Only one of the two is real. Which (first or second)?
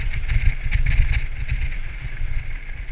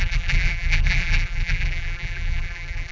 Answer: first